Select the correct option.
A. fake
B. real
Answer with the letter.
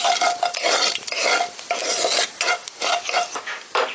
B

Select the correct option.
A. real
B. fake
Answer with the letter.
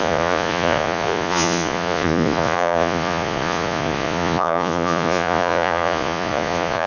B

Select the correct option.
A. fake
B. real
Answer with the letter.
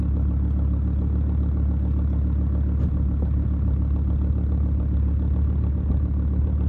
B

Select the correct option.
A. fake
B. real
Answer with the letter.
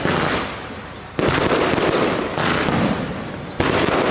B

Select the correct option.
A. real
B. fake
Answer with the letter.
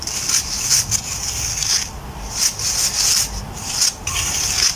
A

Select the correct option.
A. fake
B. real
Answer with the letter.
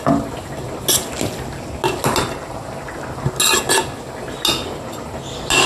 B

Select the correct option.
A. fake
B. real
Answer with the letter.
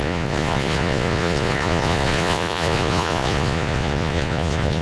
A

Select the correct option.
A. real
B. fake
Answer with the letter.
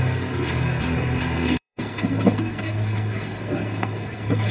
B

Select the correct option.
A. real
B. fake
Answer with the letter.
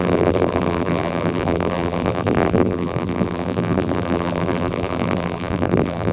B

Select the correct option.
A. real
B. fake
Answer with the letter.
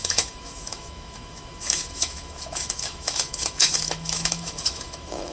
B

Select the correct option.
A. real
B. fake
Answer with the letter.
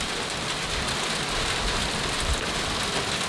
A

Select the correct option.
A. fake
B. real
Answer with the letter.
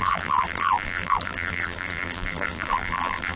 A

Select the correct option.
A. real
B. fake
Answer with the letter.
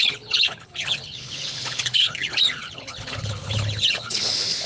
B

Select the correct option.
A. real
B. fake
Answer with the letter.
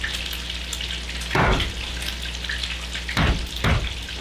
A